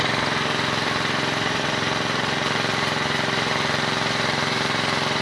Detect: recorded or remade remade